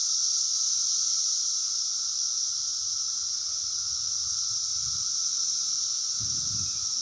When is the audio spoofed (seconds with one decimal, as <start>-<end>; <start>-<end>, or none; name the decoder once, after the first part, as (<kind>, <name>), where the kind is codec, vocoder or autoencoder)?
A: none